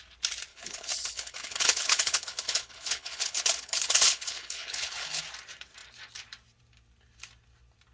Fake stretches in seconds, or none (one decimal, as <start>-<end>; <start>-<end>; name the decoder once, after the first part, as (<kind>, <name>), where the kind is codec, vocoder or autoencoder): 0.5-5.2 (codec, HILCodec)